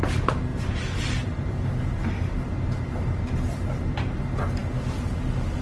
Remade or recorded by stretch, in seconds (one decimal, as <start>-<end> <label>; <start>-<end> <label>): 0.0-0.5 recorded; 0.5-1.7 remade; 1.7-5.6 recorded